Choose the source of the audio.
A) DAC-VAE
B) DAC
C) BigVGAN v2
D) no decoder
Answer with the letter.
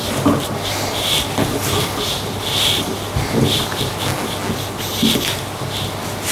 D